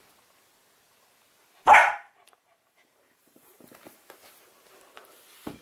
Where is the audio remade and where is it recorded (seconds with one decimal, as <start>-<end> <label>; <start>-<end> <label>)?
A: 0.0-1.8 recorded; 1.8-4.1 remade; 4.1-5.6 recorded